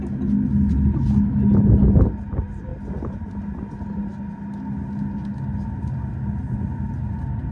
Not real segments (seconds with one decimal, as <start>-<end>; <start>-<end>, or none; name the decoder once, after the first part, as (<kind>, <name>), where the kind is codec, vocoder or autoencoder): none